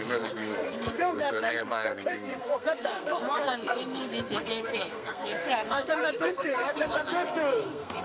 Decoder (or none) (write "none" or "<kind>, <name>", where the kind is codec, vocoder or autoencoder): codec, SNAC